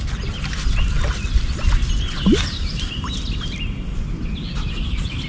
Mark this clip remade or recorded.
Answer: recorded